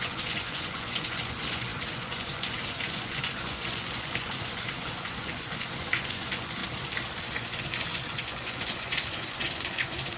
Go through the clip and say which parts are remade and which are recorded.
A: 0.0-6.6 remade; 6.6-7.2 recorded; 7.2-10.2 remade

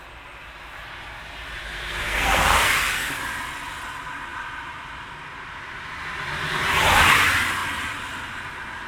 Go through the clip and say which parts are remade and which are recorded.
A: 0.0-1.6 recorded; 1.6-3.2 remade; 3.2-8.9 recorded

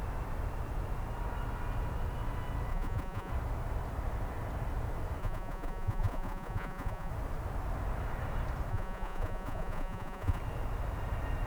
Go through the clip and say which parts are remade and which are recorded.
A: 0.0-2.7 recorded; 2.7-3.3 remade; 3.3-5.2 recorded; 5.2-7.1 remade; 7.1-8.7 recorded; 8.7-10.4 remade; 10.4-11.5 recorded

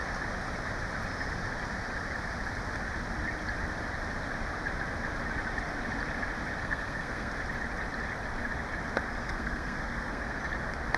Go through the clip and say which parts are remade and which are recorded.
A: 0.0-6.6 recorded; 6.6-7.3 remade; 7.3-9.2 recorded; 9.2-10.4 remade; 10.4-11.0 recorded

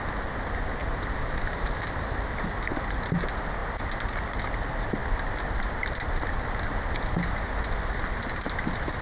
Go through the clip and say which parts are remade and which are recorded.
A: 0.0-0.8 recorded; 0.8-2.1 remade; 2.1-3.6 recorded; 3.6-4.2 remade; 4.2-5.0 recorded; 5.0-6.7 remade; 6.7-9.0 recorded